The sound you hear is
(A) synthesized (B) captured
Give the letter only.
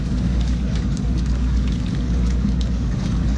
A